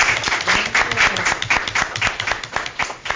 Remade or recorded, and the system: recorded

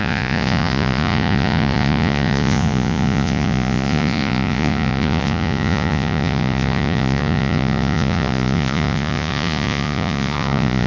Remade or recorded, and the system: remade, vocoder, Vocos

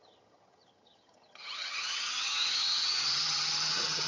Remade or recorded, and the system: remade, vocoder, HiFi-GAN